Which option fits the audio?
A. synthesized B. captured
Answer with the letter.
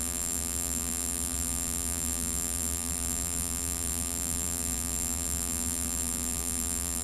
A